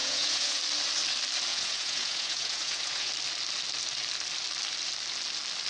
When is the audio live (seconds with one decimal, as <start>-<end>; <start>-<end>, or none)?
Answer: 0.6-1.5; 3.1-5.7